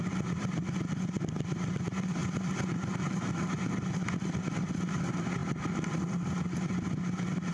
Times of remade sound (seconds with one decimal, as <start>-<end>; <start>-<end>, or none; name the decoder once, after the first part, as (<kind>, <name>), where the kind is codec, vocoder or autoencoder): none